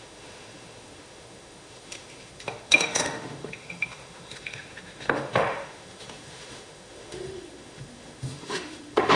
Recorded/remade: remade